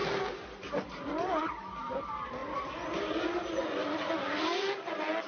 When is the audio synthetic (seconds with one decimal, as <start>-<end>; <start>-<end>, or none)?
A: none